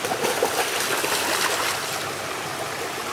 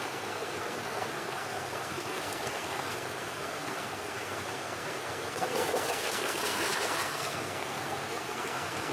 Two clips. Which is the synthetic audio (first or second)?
second